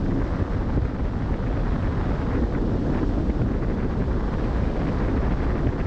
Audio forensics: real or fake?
real